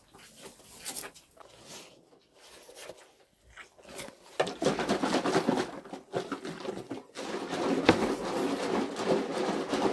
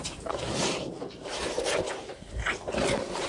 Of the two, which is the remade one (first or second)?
second